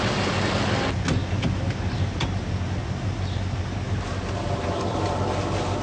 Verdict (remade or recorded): recorded